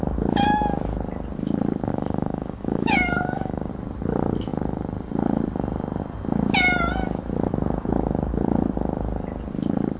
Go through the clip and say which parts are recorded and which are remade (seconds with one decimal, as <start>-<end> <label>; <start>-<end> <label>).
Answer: 0.0-1.9 recorded; 1.9-3.7 remade; 3.7-10.0 recorded